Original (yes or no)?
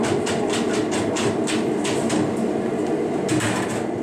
yes